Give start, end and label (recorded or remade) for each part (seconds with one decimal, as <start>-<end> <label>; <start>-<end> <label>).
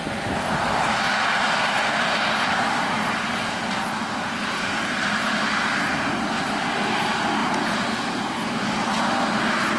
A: 0.0-7.4 recorded; 7.4-8.6 remade; 8.6-9.8 recorded